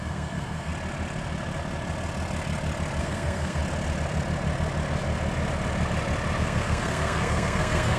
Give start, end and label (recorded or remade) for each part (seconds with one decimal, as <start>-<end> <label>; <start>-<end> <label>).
0.0-0.7 remade; 0.7-3.0 recorded; 3.0-3.6 remade; 3.6-6.4 recorded; 6.4-8.0 remade